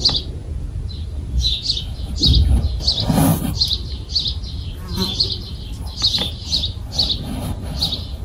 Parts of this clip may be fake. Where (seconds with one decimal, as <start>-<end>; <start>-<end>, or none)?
3.3-4.5; 4.9-5.5

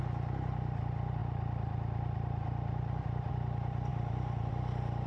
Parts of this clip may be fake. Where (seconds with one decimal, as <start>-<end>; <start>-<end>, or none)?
none

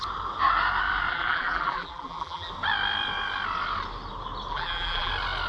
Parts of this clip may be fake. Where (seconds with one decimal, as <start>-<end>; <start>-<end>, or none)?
1.1-2.5; 4.5-5.1

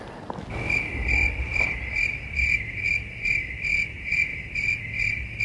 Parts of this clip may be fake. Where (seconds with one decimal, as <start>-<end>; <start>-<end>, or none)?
4.3-4.8